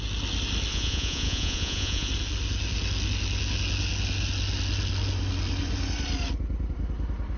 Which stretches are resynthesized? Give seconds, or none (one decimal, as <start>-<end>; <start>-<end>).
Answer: 0.7-2.1